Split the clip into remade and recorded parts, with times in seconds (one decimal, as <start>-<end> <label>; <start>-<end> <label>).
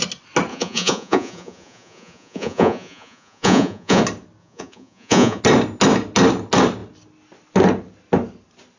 0.0-0.5 recorded; 0.5-4.0 remade; 4.0-4.4 recorded; 4.4-5.4 remade; 5.4-8.8 recorded